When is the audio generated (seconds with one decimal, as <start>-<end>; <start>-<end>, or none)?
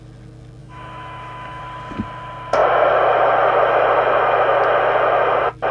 0.6-1.6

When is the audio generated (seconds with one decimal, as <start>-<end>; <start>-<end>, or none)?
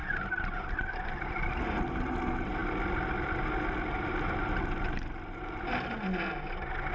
none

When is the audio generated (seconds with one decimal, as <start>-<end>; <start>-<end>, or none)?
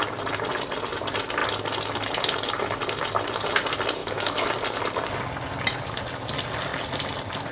4.0-4.5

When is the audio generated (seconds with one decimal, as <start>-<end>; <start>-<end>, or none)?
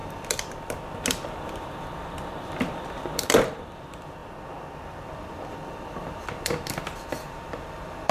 0.6-4.2; 5.1-8.1